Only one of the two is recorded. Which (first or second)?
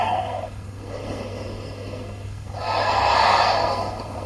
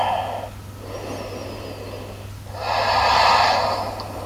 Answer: second